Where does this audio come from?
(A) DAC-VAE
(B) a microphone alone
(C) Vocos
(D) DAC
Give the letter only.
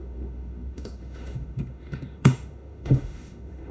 A